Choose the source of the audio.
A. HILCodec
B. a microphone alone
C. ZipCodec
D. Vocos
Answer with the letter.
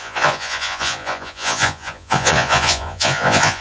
D